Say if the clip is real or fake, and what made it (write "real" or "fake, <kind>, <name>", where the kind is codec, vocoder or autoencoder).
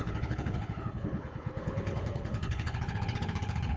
fake, codec, HILCodec